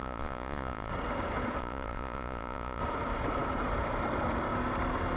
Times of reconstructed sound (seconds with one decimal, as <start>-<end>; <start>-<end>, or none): 0.0-0.9; 1.6-2.8